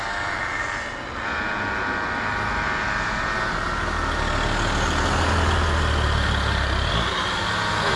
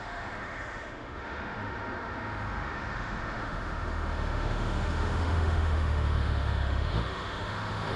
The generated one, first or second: second